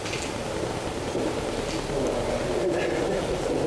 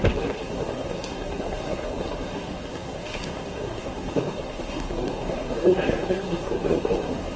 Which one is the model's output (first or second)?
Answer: second